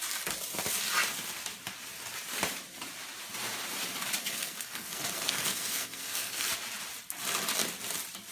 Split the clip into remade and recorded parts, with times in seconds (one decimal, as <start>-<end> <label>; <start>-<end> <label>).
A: 0.0-4.2 recorded; 4.2-6.5 remade; 6.5-8.3 recorded